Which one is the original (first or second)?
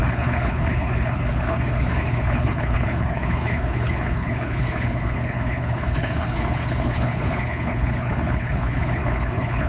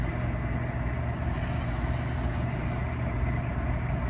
second